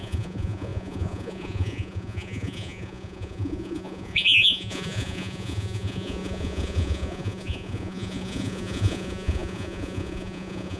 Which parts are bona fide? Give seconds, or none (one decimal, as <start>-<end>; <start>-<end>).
none